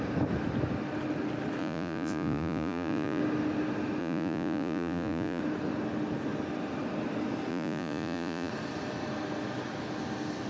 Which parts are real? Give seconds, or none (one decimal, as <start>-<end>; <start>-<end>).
0.0-1.6; 3.2-4.0; 5.4-7.5; 8.5-10.5